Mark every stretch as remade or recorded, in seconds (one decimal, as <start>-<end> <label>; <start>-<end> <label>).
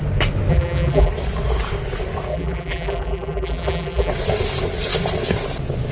0.0-0.5 recorded; 0.5-1.1 remade; 1.1-2.3 recorded; 2.3-4.1 remade; 4.1-5.9 recorded